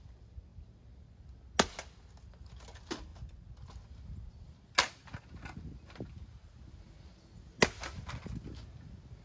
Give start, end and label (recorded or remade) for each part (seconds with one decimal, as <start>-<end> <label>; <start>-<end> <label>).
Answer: 0.0-9.2 recorded